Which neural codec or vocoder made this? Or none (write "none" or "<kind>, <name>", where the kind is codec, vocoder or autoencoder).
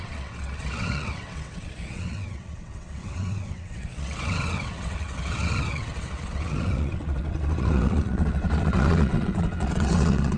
vocoder, WaveNeXt